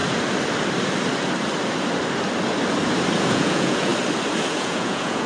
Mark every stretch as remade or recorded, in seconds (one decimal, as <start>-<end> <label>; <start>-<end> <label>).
0.0-3.2 recorded; 3.2-3.9 remade; 3.9-4.5 recorded; 4.5-5.3 remade